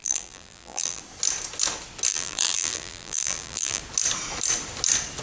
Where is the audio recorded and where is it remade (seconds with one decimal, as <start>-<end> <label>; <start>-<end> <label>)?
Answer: 0.0-1.0 remade; 1.0-2.1 recorded; 2.1-3.8 remade; 3.8-5.2 recorded